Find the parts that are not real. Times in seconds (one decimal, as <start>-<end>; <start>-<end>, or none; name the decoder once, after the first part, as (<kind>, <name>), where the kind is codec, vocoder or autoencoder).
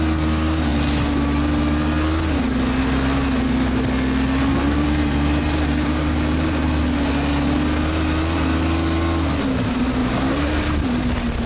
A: 4.4-6.8 (vocoder, BigVGAN v2); 10.0-10.8